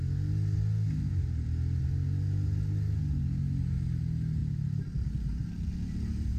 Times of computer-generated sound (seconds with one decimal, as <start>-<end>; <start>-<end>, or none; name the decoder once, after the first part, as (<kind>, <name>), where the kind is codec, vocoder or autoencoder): none